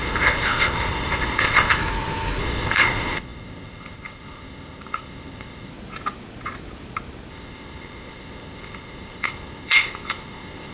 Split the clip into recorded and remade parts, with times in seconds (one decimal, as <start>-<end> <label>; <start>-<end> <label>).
0.0-1.8 remade; 1.8-2.4 recorded; 2.4-5.7 remade; 5.7-7.3 recorded; 7.3-10.7 remade